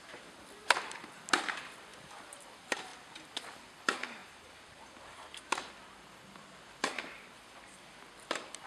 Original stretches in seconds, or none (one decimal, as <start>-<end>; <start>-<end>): 0.0-8.7